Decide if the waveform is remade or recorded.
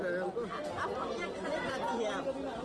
recorded